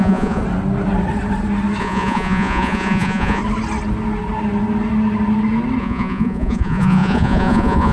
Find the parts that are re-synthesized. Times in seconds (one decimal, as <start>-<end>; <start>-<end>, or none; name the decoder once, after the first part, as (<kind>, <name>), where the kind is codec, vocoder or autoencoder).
0.0-0.4 (vocoder, Vocos); 1.8-3.4; 5.8-7.9